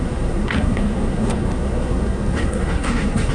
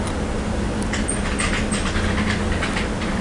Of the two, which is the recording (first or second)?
second